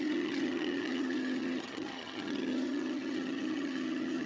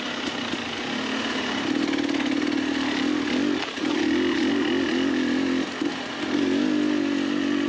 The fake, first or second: first